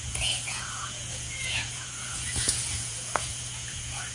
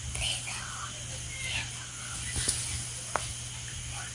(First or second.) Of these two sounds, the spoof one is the first